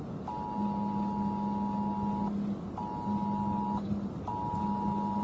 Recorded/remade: recorded